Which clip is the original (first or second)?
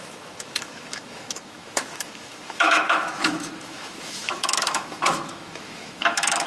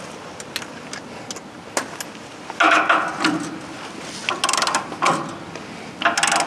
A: second